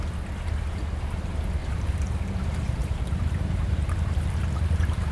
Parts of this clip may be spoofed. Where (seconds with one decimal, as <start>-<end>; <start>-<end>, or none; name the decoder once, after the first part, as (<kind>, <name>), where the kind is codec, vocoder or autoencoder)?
1.6-2.4 (vocoder, BigVGAN v2); 2.8-5.1